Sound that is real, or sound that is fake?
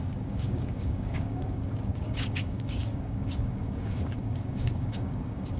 fake